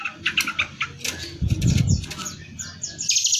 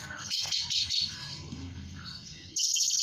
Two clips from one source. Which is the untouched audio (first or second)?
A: first